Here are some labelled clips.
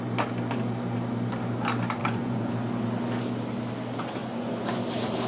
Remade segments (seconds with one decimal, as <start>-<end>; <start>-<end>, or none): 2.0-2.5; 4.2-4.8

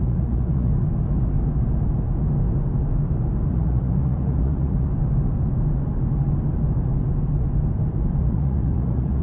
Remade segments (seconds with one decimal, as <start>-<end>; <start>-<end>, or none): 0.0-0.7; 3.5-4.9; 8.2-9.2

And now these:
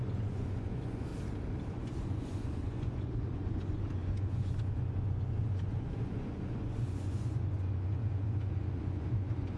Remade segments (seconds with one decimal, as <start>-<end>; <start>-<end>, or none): 0.0-1.1; 1.7-9.6

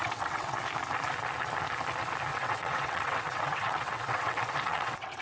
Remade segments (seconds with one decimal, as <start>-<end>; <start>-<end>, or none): 0.0-0.6; 2.3-5.2

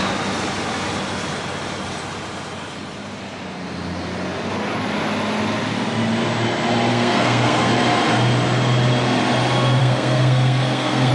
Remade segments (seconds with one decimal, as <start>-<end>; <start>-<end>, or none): 6.9-7.7; 9.8-11.1

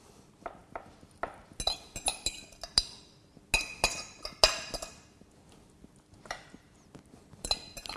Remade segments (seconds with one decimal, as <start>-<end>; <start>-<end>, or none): none

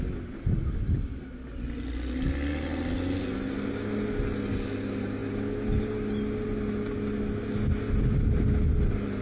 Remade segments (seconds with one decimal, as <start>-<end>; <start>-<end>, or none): none

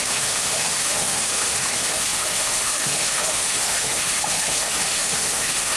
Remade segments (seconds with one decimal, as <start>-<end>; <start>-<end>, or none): 0.0-5.8